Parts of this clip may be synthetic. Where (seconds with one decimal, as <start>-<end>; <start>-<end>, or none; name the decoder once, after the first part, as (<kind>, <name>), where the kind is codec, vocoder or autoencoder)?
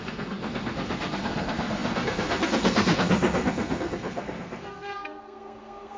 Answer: 0.0-6.0 (codec, SNAC)